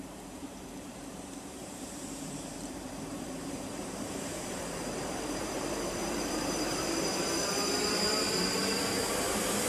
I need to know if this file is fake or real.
fake